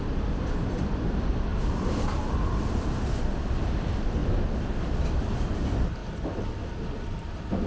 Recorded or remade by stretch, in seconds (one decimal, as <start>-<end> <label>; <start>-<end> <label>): 0.0-6.0 remade; 6.0-6.7 recorded; 6.7-7.7 remade